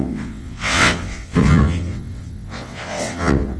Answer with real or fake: fake